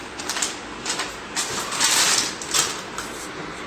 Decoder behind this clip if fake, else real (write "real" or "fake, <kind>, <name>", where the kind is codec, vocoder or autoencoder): real